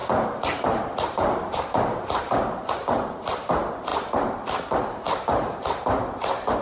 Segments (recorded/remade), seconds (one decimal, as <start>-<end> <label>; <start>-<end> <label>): 0.0-6.6 remade

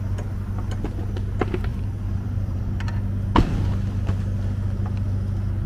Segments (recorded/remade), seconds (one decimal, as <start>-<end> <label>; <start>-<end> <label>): 0.0-1.7 recorded; 1.7-2.6 remade; 2.6-5.7 recorded

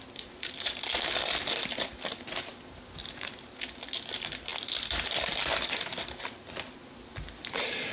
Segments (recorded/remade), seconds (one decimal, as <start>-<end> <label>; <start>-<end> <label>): 0.0-7.9 remade

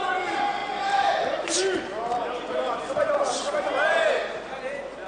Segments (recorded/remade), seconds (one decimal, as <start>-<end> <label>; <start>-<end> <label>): 0.0-5.1 remade

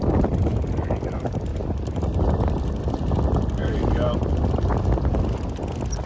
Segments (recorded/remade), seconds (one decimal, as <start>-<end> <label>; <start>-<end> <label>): 0.0-1.5 remade; 1.5-2.2 recorded; 2.2-3.6 remade; 3.6-4.3 recorded; 4.3-4.7 remade; 4.7-5.6 recorded; 5.6-6.1 remade

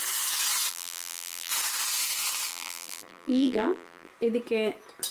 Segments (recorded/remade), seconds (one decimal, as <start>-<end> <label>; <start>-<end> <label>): 0.0-0.7 recorded; 0.7-1.5 remade; 1.5-2.5 recorded; 2.5-4.1 remade; 4.1-5.1 recorded

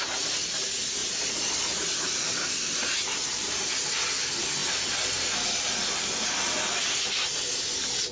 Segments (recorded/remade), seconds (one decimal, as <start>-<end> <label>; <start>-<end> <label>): 0.0-1.0 recorded; 1.0-3.7 remade; 3.7-8.1 recorded